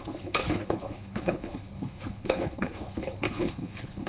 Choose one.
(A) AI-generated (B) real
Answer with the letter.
A